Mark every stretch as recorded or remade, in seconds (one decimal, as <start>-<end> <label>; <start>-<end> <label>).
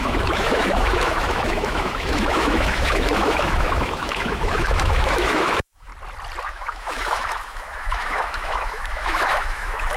0.0-5.9 remade; 5.9-6.4 recorded; 6.4-10.0 remade